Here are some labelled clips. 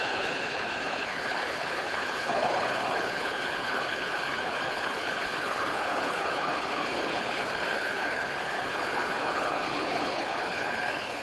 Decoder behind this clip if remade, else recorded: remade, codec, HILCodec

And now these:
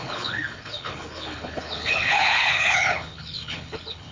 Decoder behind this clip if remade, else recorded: remade, codec, HILCodec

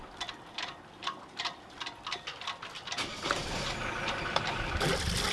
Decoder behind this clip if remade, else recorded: recorded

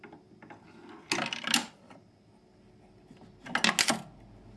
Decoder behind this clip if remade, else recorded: recorded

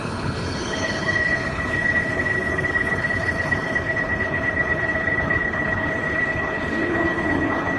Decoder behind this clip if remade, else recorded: remade, codec, HILCodec